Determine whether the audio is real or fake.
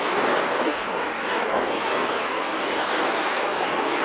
fake